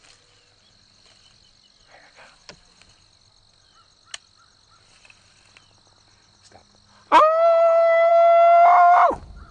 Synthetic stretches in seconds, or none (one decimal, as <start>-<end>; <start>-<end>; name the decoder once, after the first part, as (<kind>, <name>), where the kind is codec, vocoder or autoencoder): none